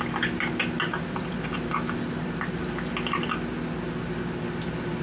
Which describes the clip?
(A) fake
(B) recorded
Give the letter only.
B